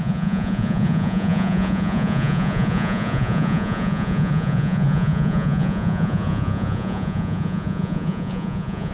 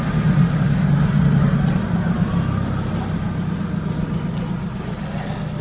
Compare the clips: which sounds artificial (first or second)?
first